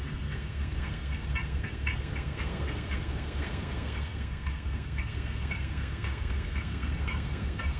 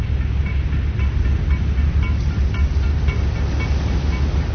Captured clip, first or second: second